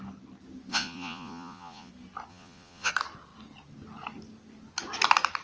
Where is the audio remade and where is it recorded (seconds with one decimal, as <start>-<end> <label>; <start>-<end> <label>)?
0.0-0.7 recorded; 0.7-1.9 remade; 1.9-2.3 recorded; 2.3-2.9 remade; 2.9-5.4 recorded